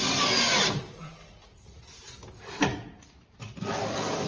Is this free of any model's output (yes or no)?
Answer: yes